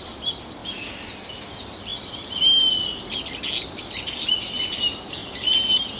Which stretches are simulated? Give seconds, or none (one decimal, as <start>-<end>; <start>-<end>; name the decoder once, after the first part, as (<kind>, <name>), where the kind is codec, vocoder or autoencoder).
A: none